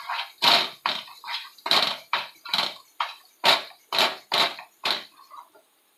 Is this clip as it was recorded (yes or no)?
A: no